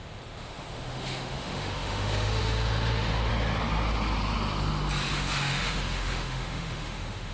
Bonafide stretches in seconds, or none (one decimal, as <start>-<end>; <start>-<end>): 3.3-5.1